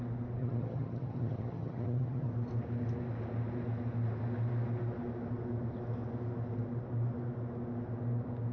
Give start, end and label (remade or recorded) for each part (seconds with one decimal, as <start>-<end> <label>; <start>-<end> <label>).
0.0-0.4 recorded; 0.4-2.3 remade; 2.3-8.5 recorded